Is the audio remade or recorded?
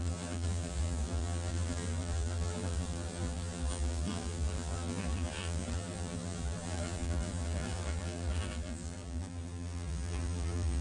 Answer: remade